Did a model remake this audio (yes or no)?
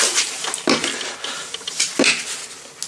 no